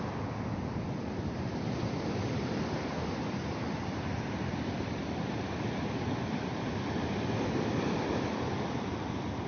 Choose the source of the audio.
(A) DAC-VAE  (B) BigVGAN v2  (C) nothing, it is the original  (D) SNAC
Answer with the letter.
B